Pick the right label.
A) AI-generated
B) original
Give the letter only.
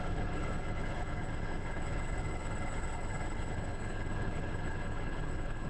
A